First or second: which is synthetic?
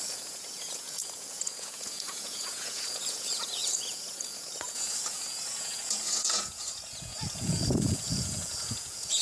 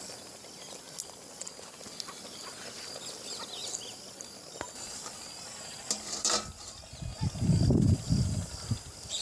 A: first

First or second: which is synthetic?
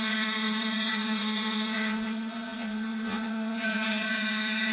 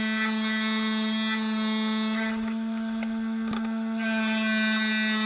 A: first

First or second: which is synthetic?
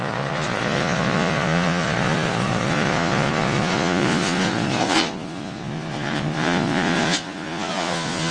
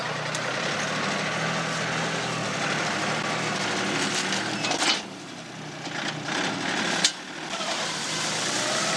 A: first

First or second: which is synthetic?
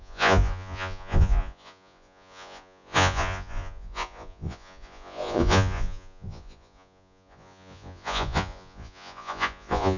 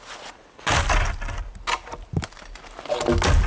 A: first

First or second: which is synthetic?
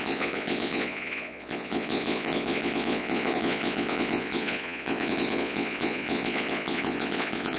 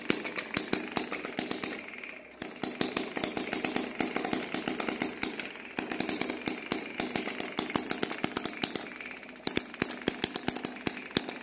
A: first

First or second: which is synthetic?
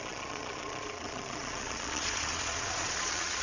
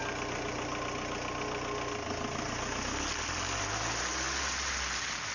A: first